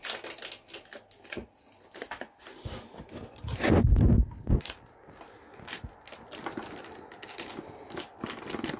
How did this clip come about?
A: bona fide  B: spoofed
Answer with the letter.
A